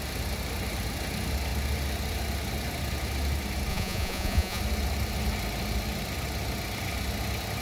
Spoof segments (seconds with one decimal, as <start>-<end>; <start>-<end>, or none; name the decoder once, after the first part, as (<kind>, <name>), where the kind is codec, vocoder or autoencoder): 3.7-4.6 (vocoder, Vocos)